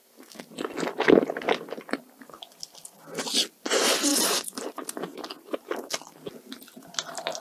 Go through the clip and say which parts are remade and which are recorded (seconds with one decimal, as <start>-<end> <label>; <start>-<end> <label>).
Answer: 0.0-4.1 recorded; 4.1-5.9 remade; 5.9-7.4 recorded